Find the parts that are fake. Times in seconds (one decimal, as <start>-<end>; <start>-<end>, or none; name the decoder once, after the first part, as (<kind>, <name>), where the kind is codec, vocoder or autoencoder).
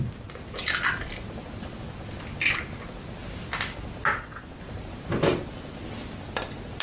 4.1-4.6 (vocoder, WaveNeXt)